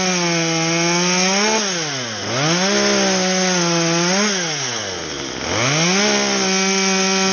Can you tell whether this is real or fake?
real